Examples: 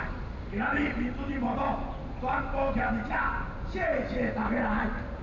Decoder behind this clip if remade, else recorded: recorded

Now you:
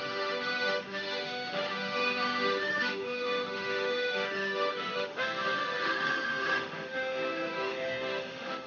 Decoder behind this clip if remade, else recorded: remade, autoencoder, DAC-VAE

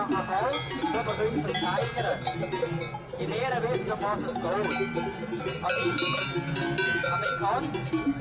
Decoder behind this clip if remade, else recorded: recorded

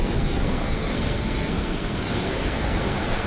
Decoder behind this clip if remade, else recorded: remade, codec, SNAC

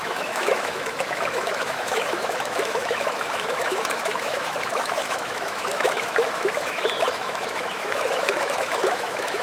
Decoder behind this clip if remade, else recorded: remade, autoencoder, DAC-VAE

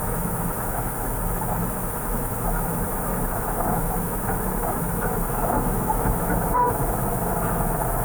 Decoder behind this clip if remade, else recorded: remade, autoencoder, DAC-VAE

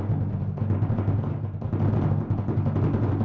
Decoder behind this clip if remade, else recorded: recorded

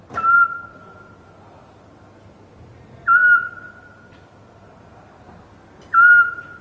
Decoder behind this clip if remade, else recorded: recorded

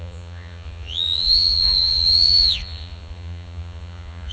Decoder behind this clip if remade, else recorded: remade, vocoder, Vocos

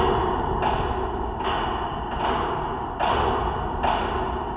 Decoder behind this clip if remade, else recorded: recorded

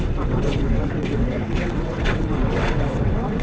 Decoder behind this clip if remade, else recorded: remade, vocoder, WaveNeXt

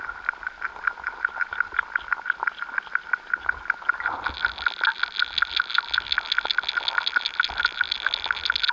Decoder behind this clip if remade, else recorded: recorded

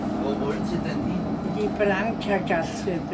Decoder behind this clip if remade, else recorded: recorded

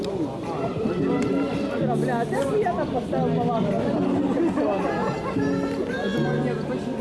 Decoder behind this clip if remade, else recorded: recorded